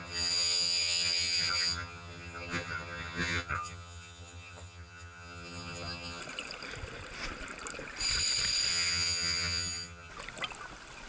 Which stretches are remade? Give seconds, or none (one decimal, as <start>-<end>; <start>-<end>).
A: 0.0-6.2; 8.7-10.1